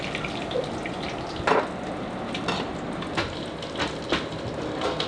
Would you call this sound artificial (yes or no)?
no